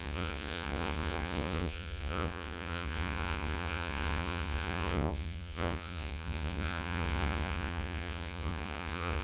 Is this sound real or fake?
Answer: fake